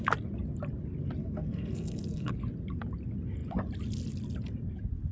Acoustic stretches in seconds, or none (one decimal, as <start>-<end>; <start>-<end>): 0.0-1.2; 2.3-5.1